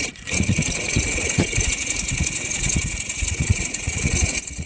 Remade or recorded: remade